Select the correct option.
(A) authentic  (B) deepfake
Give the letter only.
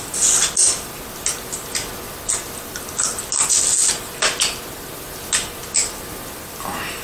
A